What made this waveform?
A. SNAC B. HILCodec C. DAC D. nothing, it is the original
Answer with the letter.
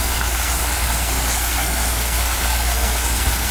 A